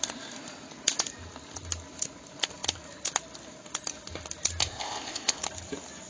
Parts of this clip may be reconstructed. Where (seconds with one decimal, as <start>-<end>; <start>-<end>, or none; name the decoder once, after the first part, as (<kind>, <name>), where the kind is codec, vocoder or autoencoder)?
4.6-5.4 (codec, ZipCodec)